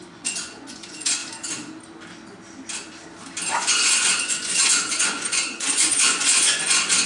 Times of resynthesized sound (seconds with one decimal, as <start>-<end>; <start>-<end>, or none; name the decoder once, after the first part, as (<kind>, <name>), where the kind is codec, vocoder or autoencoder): 0.0-1.2 (vocoder, Vocos); 3.5-7.1